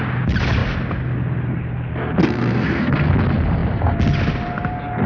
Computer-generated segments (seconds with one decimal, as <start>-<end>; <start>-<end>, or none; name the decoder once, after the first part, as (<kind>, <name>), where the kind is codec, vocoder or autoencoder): 1.9-3.1 (codec, SNAC)